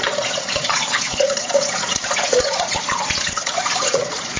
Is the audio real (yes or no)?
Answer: no